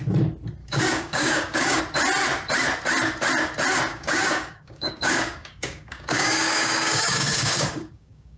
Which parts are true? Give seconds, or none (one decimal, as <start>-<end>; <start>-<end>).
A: 0.0-0.6; 1.8-3.9

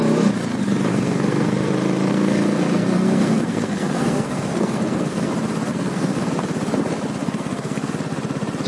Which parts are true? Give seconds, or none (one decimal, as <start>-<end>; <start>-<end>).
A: 0.0-0.9; 1.7-2.1; 5.3-5.7; 6.3-7.2; 7.9-8.7